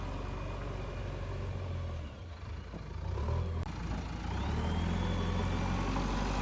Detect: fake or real real